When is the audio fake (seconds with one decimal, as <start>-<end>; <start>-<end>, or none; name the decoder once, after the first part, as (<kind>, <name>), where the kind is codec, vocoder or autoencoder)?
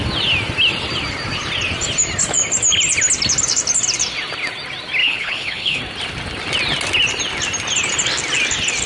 5.0-5.8 (codec, HILCodec)